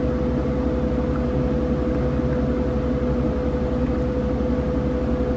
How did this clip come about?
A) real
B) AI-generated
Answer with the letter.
A